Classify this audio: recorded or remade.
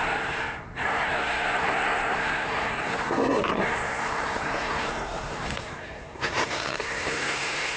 remade